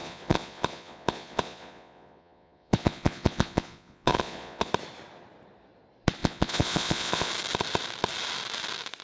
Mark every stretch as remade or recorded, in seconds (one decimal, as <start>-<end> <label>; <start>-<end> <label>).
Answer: 0.0-4.7 remade; 4.7-6.2 recorded; 6.2-7.3 remade; 7.3-9.0 recorded